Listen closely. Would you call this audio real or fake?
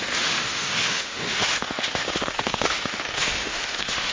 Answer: fake